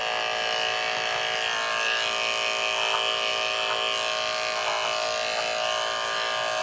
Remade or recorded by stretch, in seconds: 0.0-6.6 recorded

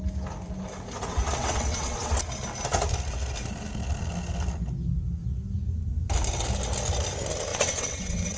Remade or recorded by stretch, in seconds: 0.0-1.1 recorded; 1.1-2.2 remade; 2.2-7.5 recorded; 7.5-8.4 remade

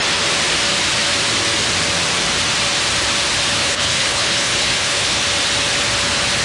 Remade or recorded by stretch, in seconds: 0.0-3.6 recorded; 3.6-5.2 remade; 5.2-6.4 recorded